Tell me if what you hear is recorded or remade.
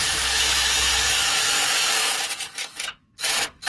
remade